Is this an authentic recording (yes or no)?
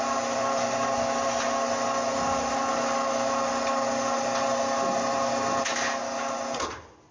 yes